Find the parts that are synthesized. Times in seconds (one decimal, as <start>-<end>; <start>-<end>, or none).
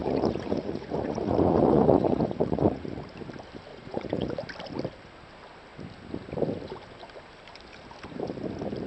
0.0-3.1; 3.7-4.3